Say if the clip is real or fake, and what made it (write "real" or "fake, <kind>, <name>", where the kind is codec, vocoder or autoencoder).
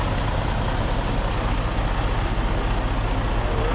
real